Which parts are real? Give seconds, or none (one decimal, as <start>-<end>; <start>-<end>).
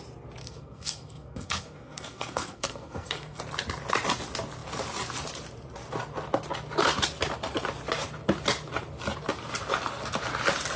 0.0-0.4; 3.4-10.8